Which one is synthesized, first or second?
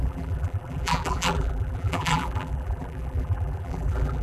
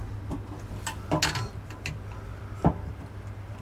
first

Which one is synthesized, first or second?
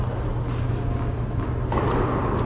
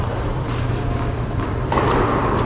second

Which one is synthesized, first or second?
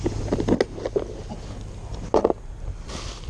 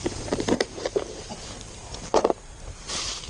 second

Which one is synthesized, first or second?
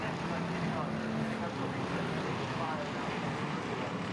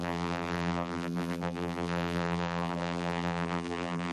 second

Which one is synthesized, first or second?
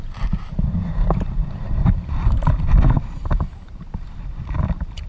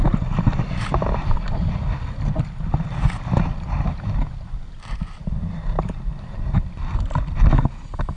first